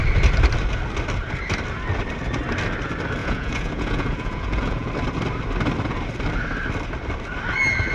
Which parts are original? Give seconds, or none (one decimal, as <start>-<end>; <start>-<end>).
0.0-3.2; 4.9-7.9